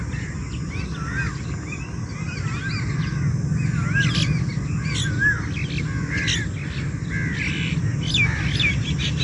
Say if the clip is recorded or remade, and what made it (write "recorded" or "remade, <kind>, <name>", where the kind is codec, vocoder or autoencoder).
recorded